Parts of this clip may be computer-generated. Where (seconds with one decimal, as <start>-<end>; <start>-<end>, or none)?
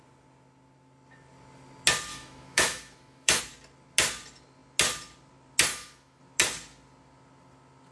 2.1-3.4; 5.7-6.2